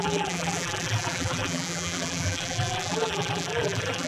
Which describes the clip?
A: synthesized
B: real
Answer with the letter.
A